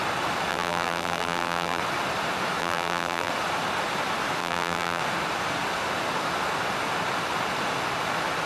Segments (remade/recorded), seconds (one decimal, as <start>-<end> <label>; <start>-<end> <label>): 0.0-0.5 recorded; 0.5-1.8 remade; 1.8-2.6 recorded; 2.6-3.3 remade; 3.3-4.4 recorded; 4.4-5.0 remade; 5.0-8.5 recorded